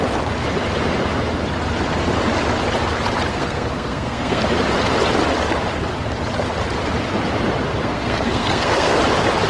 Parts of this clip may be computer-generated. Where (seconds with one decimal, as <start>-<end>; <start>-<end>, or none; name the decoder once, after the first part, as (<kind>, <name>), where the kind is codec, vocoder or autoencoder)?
3.3-4.4 (codec, SNAC); 7.8-9.0